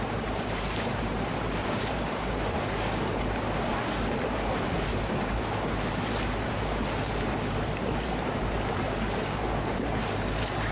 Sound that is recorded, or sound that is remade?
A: remade